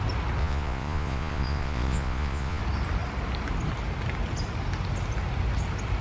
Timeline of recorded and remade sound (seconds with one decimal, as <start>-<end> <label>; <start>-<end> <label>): 0.0-0.4 recorded; 0.4-2.6 remade; 2.6-6.0 recorded